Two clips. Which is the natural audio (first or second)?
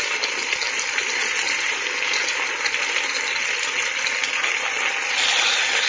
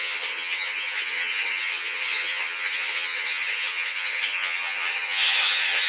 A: first